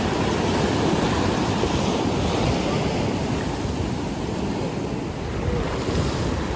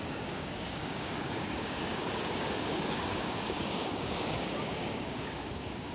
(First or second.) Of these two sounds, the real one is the first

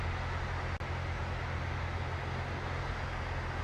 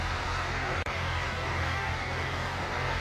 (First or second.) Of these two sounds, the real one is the first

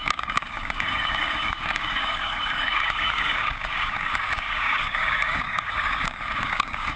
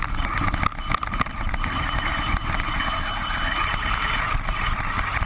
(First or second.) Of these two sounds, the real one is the second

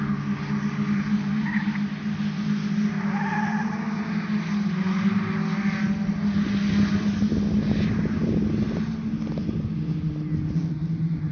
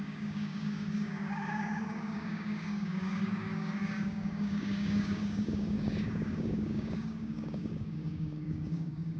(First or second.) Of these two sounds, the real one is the first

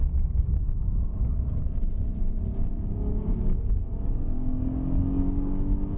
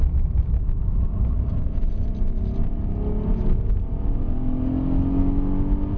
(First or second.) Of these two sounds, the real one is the second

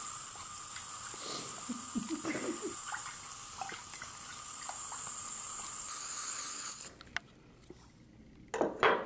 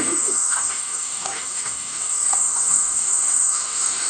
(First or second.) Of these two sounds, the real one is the first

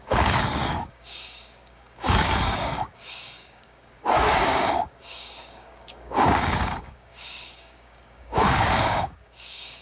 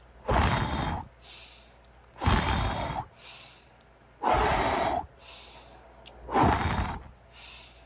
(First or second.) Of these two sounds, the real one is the second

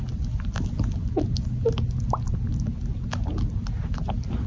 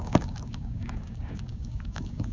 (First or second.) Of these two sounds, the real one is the first